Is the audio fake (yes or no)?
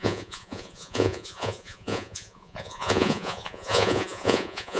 yes